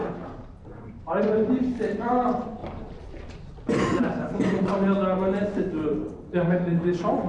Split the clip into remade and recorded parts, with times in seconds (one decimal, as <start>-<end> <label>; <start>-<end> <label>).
0.0-2.6 remade; 2.6-4.0 recorded; 4.0-4.8 remade; 4.8-5.7 recorded; 5.7-7.3 remade